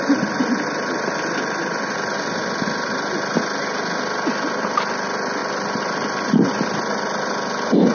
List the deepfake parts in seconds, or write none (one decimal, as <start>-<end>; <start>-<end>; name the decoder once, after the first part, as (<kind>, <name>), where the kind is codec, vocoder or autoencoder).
none